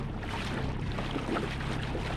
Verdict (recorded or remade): recorded